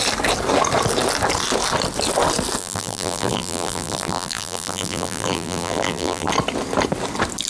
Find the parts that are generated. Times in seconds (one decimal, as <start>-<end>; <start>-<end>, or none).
2.6-6.3